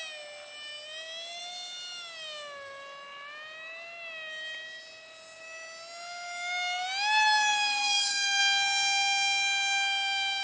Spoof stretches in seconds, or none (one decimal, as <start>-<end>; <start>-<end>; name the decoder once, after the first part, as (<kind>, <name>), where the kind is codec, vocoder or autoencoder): 7.8-8.4 (codec, DAC)